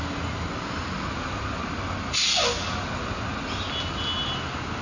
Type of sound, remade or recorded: recorded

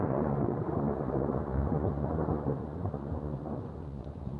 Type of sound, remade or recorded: remade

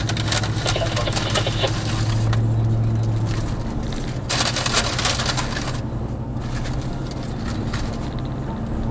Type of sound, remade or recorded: recorded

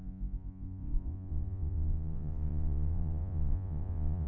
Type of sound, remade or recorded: remade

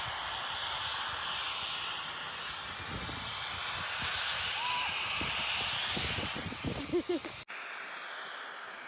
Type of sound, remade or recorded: recorded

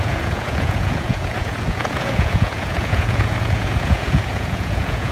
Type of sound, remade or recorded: remade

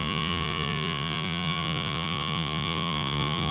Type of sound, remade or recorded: remade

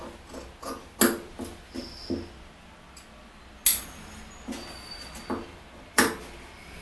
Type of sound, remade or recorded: recorded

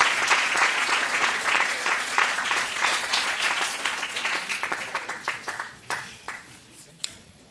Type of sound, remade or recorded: remade